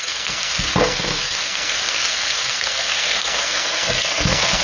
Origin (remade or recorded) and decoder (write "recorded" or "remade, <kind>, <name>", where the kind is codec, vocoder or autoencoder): remade, codec, SNAC